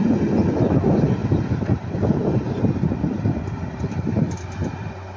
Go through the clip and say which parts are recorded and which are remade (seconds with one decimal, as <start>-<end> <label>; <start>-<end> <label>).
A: 0.0-5.2 recorded